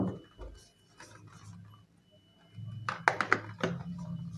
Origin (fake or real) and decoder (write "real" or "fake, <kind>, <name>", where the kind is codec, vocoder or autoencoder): real